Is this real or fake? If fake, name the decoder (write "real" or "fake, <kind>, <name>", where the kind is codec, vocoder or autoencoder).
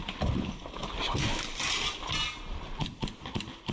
real